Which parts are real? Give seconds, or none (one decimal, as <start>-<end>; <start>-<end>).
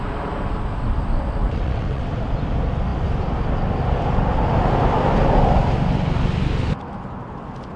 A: 0.0-1.4; 2.0-7.8